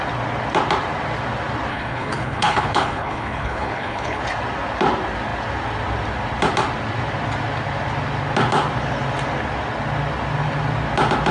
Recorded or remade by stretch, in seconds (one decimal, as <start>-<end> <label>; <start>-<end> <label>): 0.0-1.7 recorded; 1.7-4.2 remade; 4.2-11.3 recorded